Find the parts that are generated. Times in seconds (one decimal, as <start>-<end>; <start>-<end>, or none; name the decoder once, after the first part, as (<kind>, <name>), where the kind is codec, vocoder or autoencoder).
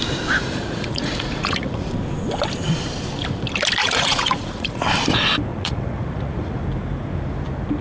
0.4-1.9 (vocoder, Vocos); 3.8-4.8; 5.5-6.6